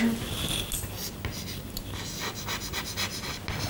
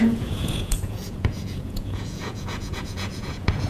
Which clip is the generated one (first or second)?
second